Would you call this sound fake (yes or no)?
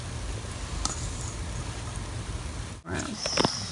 no